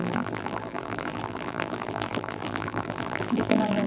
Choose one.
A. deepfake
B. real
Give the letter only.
A